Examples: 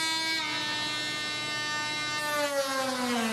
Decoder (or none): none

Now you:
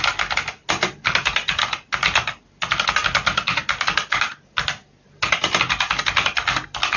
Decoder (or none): none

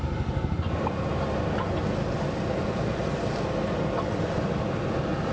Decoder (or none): none